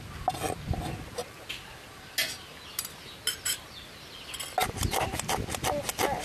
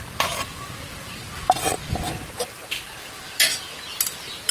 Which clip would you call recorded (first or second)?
first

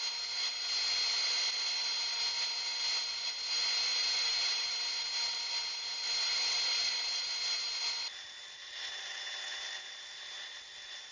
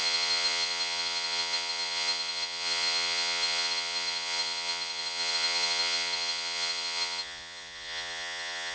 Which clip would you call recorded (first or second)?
first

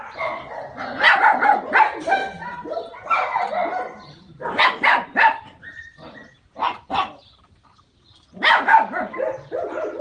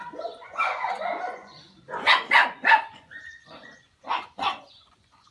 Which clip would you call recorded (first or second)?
first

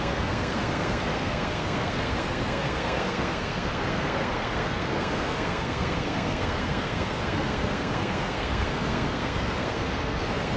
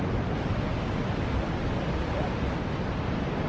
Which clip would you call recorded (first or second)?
second